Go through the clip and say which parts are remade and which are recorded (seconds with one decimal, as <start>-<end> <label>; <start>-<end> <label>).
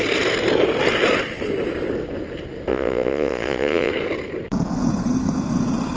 0.0-2.7 recorded; 2.7-3.9 remade; 3.9-6.0 recorded